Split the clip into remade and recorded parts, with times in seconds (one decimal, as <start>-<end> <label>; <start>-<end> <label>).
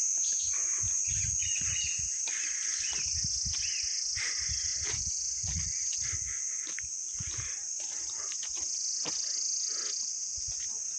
0.0-4.7 recorded; 4.7-6.1 remade; 6.1-11.0 recorded